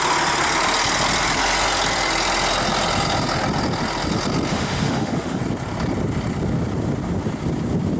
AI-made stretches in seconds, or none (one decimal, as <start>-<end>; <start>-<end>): 4.5-5.4